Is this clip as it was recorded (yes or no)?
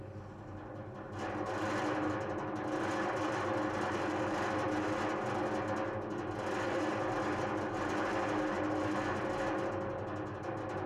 yes